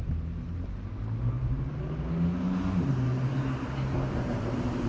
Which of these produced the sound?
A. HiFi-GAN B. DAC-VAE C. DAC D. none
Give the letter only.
D